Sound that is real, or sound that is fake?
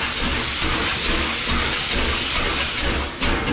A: real